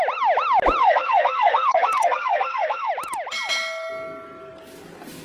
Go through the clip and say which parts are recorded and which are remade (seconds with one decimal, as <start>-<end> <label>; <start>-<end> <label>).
0.0-0.8 recorded; 0.8-2.9 remade; 2.9-5.2 recorded